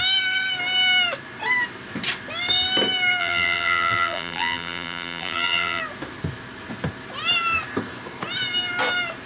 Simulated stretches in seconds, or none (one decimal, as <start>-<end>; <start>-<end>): 3.2-5.8